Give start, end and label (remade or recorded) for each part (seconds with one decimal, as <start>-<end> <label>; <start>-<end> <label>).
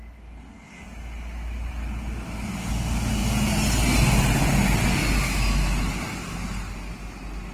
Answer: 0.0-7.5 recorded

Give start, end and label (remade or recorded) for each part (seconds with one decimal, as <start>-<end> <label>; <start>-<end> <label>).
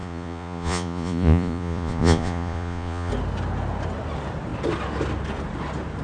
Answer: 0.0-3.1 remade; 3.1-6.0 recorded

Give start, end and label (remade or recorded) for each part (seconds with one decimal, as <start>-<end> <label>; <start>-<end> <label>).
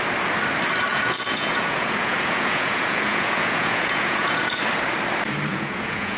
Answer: 0.0-0.9 recorded; 0.9-4.6 remade; 4.6-5.5 recorded; 5.5-6.2 remade